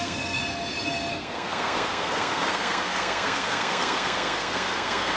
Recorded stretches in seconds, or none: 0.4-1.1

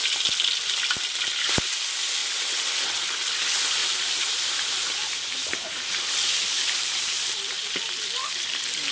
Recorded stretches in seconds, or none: 0.0-3.8; 7.7-8.9

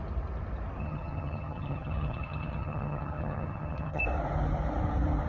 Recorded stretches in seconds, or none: 0.0-0.8; 4.0-5.3